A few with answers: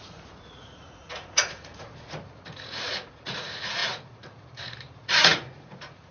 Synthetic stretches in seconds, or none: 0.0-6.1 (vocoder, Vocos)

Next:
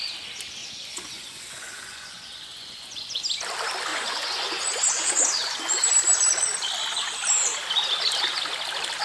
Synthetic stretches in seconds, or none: 0.6-3.2 (vocoder, Vocos); 3.9-5.9

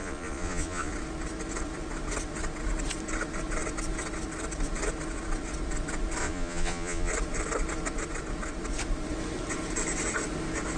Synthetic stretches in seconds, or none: 0.0-0.9 (vocoder, Vocos); 6.2-7.1